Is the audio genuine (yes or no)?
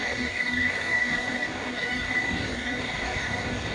no